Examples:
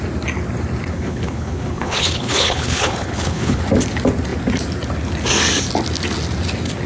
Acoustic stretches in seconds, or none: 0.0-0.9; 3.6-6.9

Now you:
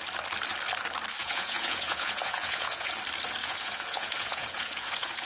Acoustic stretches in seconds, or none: 0.0-1.2; 2.9-3.4

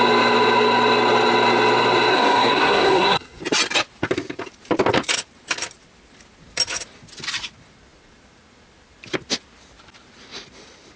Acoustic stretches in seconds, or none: 0.0-2.1; 3.4-11.0

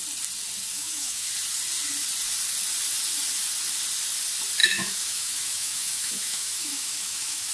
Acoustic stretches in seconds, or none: 0.0-0.7; 1.3-4.6